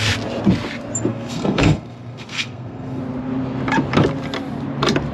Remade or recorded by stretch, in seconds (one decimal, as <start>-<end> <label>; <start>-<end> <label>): 0.0-1.1 recorded; 1.1-3.0 remade; 3.0-5.1 recorded